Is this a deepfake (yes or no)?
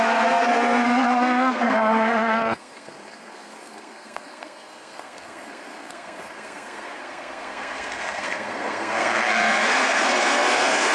yes